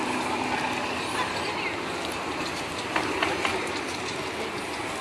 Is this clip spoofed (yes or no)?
no